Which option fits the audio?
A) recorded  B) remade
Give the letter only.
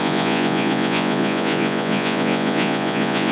B